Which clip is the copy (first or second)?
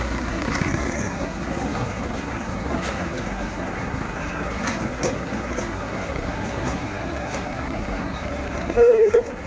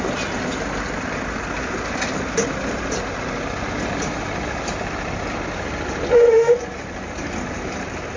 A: first